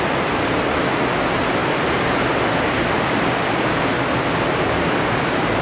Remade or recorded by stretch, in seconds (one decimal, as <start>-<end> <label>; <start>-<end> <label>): 0.0-5.6 recorded

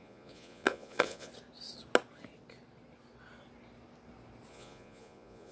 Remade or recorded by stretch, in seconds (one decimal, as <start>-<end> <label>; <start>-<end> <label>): 0.0-1.3 remade; 1.3-4.5 recorded; 4.5-5.5 remade

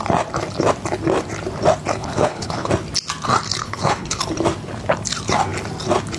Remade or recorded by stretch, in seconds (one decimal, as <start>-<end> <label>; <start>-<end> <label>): 0.0-1.9 recorded; 1.9-2.7 remade; 2.7-3.6 recorded; 3.6-4.2 remade; 4.2-6.2 recorded

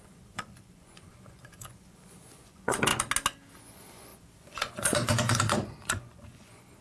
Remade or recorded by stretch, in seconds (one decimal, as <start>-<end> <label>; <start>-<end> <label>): 0.0-2.9 remade; 2.9-3.6 recorded; 3.6-6.8 remade

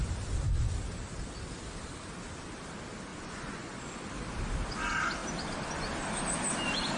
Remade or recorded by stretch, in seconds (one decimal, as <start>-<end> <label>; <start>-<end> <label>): 0.0-3.1 recorded; 3.1-3.8 remade; 3.8-7.0 recorded

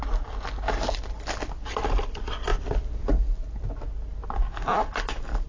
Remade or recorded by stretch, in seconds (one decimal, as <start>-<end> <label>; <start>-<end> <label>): 0.0-2.5 recorded; 2.5-3.1 remade; 3.1-5.5 recorded

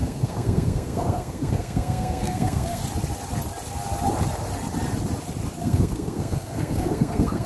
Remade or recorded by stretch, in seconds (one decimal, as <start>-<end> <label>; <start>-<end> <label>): 0.0-2.8 remade; 2.8-5.6 recorded; 5.6-7.5 remade